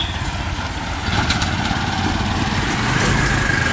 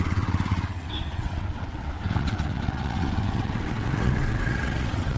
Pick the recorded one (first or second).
first